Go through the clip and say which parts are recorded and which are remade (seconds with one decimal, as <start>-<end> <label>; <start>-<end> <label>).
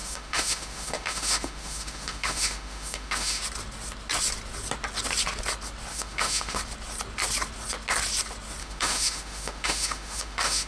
0.0-3.4 remade; 3.4-5.9 recorded; 5.9-6.6 remade; 6.6-8.6 recorded; 8.6-10.7 remade